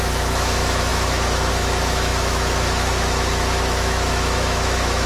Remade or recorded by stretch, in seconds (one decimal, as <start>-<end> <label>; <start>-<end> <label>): 0.0-5.1 remade